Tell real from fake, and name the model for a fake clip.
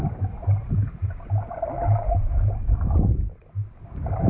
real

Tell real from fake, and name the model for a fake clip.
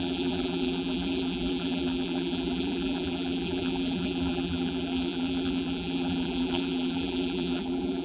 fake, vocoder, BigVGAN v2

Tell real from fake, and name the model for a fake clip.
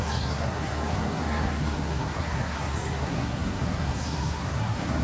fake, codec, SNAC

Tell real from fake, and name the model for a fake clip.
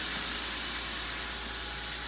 real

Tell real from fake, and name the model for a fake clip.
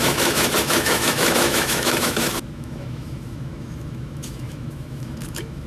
fake, autoencoder, DAC-VAE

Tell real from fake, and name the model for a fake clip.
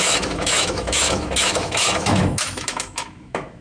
fake, autoencoder, DAC-VAE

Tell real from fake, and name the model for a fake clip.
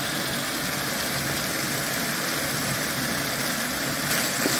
real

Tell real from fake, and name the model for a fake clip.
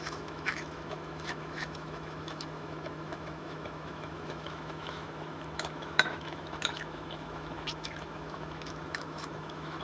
fake, autoencoder, DAC-VAE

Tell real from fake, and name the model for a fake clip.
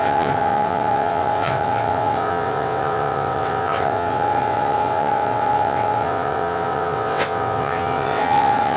fake, vocoder, WaveNeXt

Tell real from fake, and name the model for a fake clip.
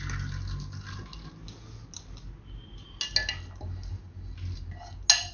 real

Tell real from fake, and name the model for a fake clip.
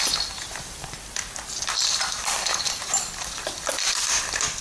real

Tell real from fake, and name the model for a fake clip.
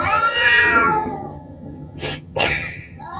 fake, vocoder, HiFi-GAN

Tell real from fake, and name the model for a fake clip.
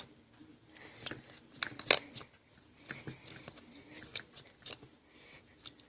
real